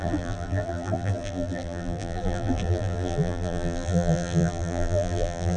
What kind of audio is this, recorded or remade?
remade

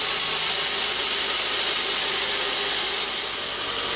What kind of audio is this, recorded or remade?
recorded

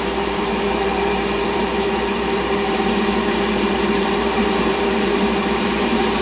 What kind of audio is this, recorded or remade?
remade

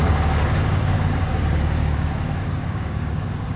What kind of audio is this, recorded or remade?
remade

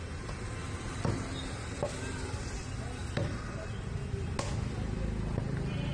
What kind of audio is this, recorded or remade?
recorded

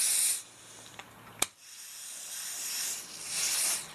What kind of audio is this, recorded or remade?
recorded